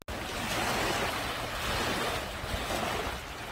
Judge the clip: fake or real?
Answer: real